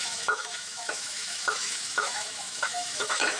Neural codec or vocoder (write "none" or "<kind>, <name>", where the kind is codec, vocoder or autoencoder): autoencoder, DAC-VAE